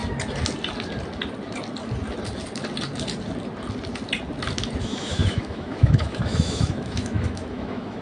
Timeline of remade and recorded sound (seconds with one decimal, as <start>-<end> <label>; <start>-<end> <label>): 0.0-4.8 recorded; 4.8-8.0 remade